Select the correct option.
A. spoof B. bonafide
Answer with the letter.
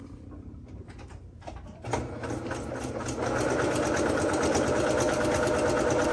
B